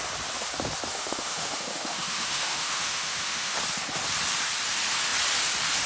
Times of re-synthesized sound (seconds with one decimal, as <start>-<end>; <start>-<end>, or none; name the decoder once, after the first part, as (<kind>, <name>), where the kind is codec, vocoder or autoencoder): 0.9-3.5 (autoencoder, DAC-VAE)